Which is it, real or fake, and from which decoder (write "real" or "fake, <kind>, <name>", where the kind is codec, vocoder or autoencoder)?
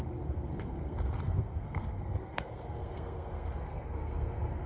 fake, codec, SNAC